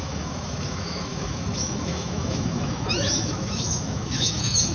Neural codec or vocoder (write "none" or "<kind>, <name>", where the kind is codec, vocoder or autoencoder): autoencoder, DAC-VAE